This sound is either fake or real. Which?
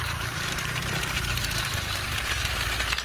fake